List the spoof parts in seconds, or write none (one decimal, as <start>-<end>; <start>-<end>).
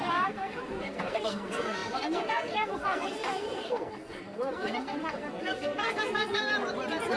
0.0-6.5